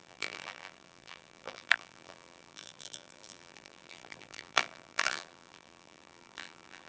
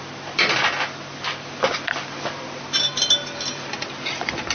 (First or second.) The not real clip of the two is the first